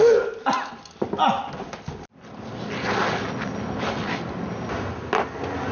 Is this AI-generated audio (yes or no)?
no